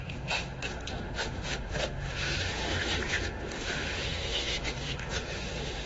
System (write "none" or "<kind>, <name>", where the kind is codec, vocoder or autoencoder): autoencoder, DAC-VAE